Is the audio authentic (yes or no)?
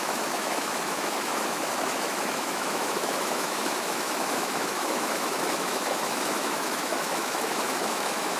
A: no